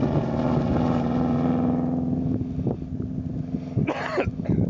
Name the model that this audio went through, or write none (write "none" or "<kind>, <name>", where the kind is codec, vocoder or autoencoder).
none